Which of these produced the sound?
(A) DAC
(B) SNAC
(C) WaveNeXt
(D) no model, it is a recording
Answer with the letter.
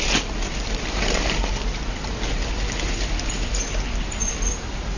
D